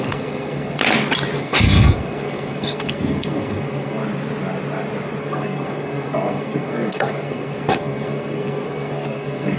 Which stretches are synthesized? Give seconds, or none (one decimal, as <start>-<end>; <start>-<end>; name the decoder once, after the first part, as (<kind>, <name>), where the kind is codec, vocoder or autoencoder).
0.0-0.8 (codec, SNAC); 1.4-4.0; 5.2-9.6